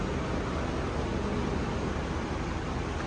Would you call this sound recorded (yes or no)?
yes